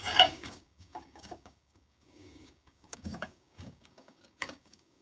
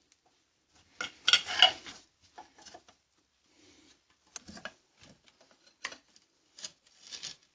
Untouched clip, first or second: second